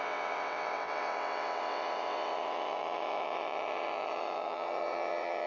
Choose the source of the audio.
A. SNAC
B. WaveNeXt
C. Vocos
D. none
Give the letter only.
B